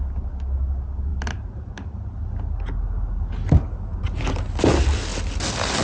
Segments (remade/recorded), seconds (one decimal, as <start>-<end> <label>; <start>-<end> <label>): 0.0-5.8 recorded